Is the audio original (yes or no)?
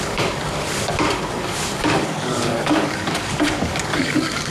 no